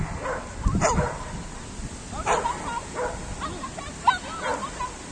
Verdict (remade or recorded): recorded